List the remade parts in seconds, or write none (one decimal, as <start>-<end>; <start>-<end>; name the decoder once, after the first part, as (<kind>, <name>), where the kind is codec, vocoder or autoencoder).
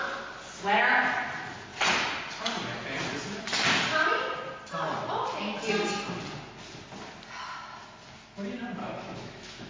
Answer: 8.8-9.7 (autoencoder, DAC-VAE)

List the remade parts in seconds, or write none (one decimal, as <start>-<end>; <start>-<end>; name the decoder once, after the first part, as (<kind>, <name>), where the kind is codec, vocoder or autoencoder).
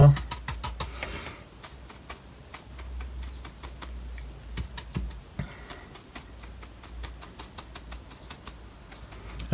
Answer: none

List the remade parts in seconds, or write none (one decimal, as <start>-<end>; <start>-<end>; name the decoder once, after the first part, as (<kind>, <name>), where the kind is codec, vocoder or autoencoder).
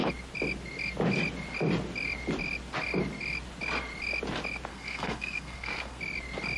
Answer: 4.7-6.0 (codec, SNAC)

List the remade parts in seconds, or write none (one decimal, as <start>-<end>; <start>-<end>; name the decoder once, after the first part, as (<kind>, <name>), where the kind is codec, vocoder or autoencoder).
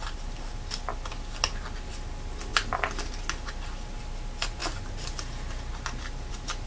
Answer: none